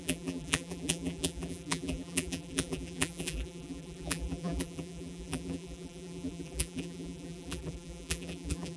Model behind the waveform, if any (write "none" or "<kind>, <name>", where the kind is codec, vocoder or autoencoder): vocoder, BigVGAN v2